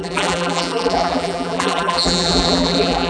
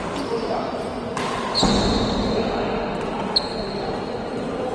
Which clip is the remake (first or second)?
first